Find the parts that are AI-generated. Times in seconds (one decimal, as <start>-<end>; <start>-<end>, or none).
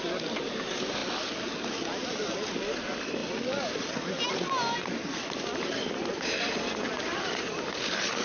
none